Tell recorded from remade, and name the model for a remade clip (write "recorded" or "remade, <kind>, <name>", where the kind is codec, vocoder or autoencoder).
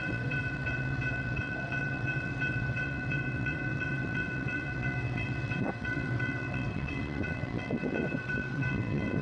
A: remade, vocoder, WaveNeXt